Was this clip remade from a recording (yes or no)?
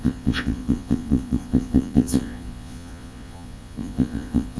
yes